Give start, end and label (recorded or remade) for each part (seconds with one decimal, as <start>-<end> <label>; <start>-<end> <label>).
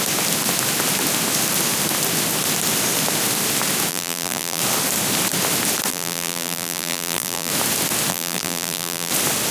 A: 0.0-3.9 recorded; 3.9-4.6 remade; 4.6-5.9 recorded; 5.9-7.5 remade; 7.5-8.1 recorded; 8.1-9.1 remade; 9.1-9.5 recorded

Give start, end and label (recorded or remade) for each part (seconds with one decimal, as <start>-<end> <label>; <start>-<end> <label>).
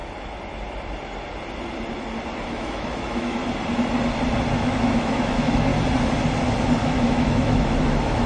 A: 0.0-2.5 recorded; 2.5-3.4 remade; 3.4-4.6 recorded; 4.6-5.7 remade; 5.7-6.8 recorded; 6.8-8.3 remade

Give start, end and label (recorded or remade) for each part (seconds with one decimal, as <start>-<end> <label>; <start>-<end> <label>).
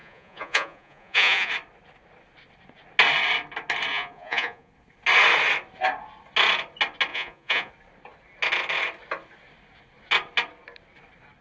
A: 0.0-1.5 remade; 1.5-3.9 recorded; 3.9-4.7 remade; 4.7-7.1 recorded; 7.1-7.7 remade; 7.7-11.4 recorded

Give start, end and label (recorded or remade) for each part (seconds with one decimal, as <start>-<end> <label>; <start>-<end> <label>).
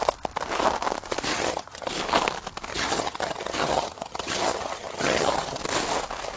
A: 0.0-1.3 recorded; 1.3-1.9 remade; 1.9-2.7 recorded; 2.7-5.6 remade; 5.6-6.4 recorded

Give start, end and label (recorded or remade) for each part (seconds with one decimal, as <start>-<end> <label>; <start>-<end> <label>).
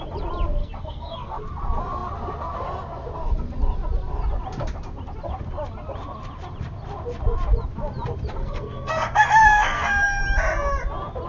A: 0.0-0.6 recorded; 0.6-1.4 remade; 1.4-8.4 recorded; 8.4-10.2 remade; 10.2-11.3 recorded